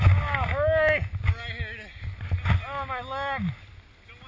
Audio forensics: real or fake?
real